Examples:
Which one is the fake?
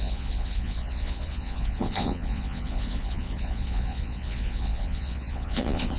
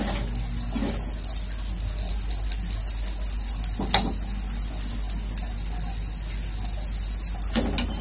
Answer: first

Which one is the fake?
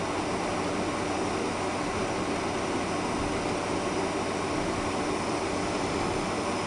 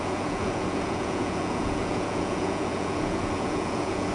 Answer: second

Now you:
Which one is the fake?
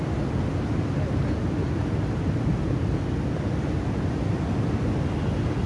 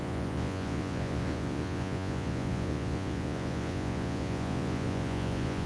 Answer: second